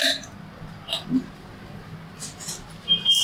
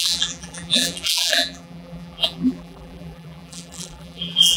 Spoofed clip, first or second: second